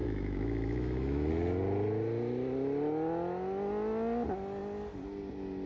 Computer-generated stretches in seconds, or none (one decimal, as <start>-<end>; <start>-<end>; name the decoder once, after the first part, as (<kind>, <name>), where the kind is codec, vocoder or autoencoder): 0.0-1.3 (autoencoder, DAC-VAE)